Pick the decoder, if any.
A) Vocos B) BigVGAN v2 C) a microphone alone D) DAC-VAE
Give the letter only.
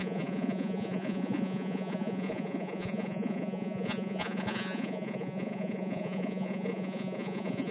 A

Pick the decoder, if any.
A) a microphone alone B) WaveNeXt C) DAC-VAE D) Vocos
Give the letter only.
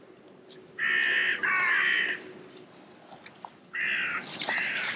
A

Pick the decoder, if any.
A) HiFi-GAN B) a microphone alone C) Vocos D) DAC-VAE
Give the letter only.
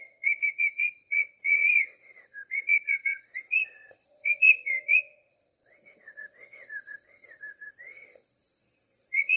C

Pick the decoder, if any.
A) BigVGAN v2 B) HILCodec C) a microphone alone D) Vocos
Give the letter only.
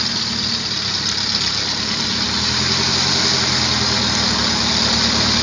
C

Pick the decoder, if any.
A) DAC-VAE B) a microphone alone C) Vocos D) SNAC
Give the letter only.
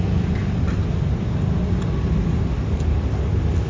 B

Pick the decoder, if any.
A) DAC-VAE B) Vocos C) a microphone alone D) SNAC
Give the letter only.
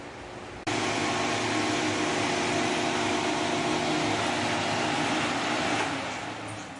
C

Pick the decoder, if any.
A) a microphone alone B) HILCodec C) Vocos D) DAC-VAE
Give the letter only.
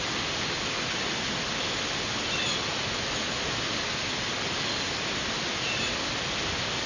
A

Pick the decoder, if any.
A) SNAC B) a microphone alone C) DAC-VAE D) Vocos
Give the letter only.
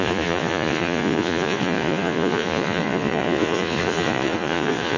D